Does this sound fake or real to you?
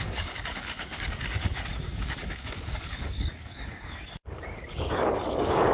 fake